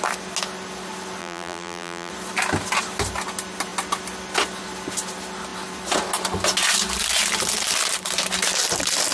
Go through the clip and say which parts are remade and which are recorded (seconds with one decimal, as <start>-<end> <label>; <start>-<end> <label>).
0.0-1.2 recorded; 1.2-2.1 remade; 2.1-9.1 recorded